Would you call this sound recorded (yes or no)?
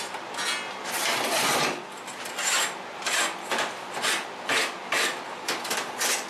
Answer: yes